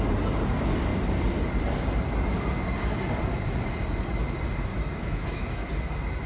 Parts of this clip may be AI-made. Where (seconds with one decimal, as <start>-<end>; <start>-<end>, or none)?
4.7-5.7